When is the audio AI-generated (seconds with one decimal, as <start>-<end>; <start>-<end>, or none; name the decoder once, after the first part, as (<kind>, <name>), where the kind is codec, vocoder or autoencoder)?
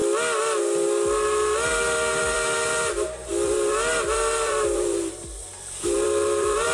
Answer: 2.2-6.7 (vocoder, BigVGAN v2)